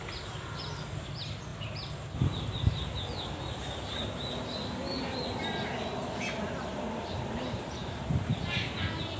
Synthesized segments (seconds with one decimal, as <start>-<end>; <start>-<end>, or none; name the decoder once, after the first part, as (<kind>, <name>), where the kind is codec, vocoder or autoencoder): none